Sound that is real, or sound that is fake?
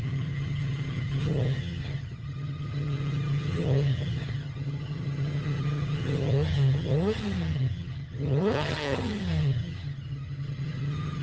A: fake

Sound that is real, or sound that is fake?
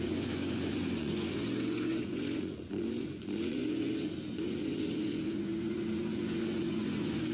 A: fake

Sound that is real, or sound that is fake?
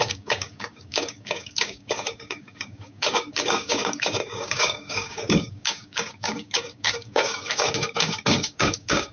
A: fake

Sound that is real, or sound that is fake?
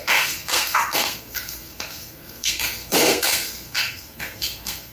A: fake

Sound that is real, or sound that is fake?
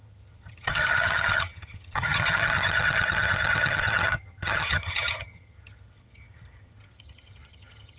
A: fake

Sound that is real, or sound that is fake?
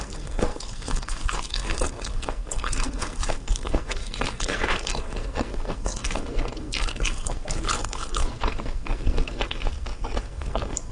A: fake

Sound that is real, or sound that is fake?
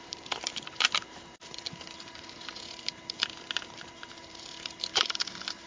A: fake